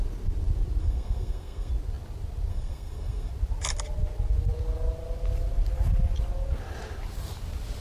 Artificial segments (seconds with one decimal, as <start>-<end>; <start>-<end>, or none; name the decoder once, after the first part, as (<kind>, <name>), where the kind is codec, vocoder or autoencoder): 0.8-1.7 (codec, SNAC); 2.5-3.3